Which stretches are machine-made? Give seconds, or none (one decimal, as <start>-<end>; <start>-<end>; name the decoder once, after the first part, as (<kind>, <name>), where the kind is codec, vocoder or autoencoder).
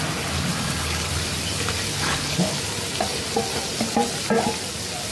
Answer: 0.5-1.1 (codec, HILCodec); 1.9-2.5